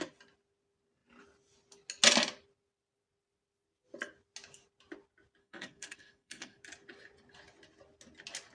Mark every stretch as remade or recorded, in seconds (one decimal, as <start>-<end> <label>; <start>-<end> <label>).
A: 0.0-5.4 recorded; 5.4-6.6 remade; 6.6-8.5 recorded